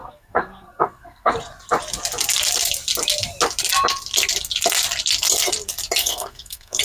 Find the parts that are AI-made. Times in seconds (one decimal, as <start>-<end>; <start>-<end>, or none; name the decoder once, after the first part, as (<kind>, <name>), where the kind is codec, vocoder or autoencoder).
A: 0.0-1.3 (codec, SNAC); 6.0-6.8